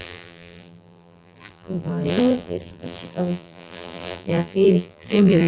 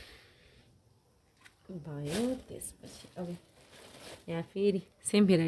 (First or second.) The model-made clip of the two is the first